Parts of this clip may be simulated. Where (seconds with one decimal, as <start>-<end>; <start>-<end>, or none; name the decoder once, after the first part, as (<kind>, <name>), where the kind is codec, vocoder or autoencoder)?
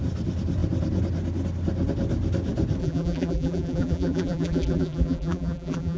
2.8-6.0 (vocoder, BigVGAN v2)